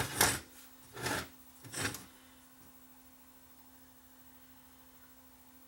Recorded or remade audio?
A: recorded